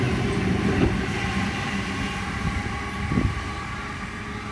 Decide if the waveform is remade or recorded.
recorded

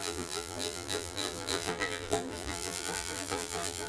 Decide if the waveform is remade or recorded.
remade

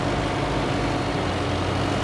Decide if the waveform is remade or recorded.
recorded